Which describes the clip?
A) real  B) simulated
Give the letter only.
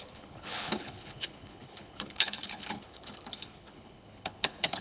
B